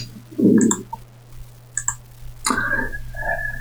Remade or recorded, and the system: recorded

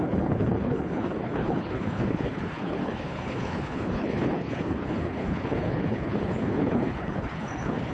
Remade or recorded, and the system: remade, codec, HILCodec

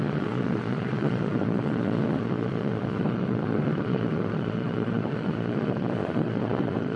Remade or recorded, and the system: remade, vocoder, Vocos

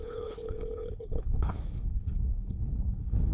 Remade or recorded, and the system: remade, codec, HILCodec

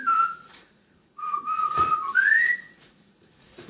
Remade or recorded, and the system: remade, vocoder, Vocos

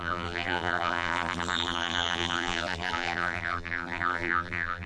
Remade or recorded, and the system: remade, vocoder, BigVGAN v2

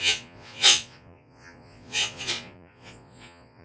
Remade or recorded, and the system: remade, vocoder, Vocos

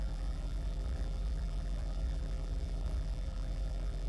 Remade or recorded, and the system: remade, vocoder, BigVGAN v2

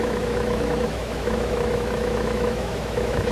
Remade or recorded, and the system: remade, autoencoder, DAC-VAE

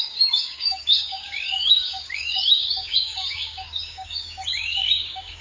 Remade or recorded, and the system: remade, codec, DAC